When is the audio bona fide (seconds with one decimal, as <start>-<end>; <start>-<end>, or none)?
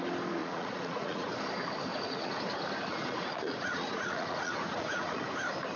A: 0.0-0.4; 1.3-1.9; 2.4-2.9; 5.2-5.8